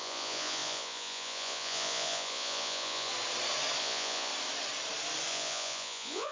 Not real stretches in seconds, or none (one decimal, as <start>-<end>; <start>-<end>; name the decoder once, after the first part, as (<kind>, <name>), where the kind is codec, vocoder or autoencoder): 0.0-3.1 (vocoder, Vocos); 3.8-4.3; 5.3-6.3

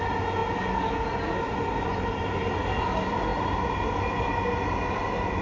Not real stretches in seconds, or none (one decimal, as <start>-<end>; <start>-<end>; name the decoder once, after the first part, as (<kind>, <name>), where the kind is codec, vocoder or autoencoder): none

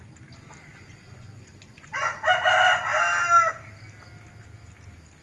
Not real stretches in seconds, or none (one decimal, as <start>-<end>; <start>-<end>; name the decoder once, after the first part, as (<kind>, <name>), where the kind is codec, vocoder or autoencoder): 0.7-2.2 (vocoder, Vocos)

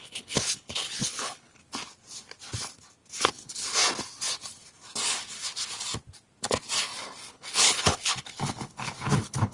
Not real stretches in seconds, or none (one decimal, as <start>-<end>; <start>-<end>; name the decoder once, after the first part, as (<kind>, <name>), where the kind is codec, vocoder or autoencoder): 0.0-1.6 (codec, HILCodec); 3.3-3.8; 7.3-9.5

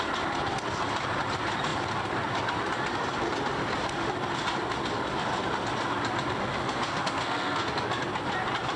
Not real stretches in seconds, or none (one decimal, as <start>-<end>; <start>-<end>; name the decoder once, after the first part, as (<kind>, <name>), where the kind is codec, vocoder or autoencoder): 6.6-7.7 (codec, SNAC)

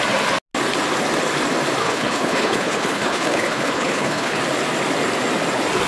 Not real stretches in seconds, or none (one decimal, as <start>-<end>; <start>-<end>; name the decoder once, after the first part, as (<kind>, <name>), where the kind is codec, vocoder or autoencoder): 1.8-4.4 (codec, HILCodec)